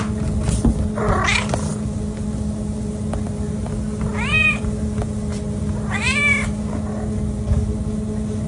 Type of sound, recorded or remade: recorded